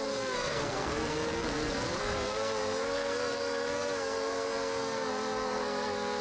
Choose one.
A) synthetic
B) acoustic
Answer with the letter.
A